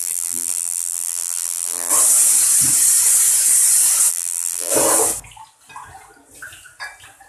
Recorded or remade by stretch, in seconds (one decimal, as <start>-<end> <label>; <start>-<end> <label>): 0.0-1.9 remade; 1.9-4.1 recorded; 4.1-4.7 remade; 4.7-7.3 recorded